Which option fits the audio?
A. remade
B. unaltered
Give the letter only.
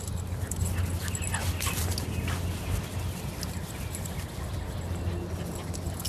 B